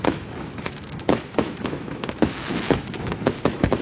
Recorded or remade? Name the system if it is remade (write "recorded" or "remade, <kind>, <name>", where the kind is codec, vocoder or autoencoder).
remade, autoencoder, DAC-VAE